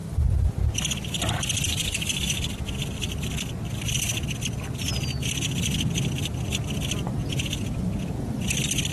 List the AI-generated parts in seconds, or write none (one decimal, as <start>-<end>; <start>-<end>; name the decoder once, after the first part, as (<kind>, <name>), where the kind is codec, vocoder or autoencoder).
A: 7.2-8.3 (vocoder, Vocos)